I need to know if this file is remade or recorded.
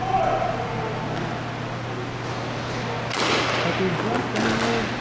recorded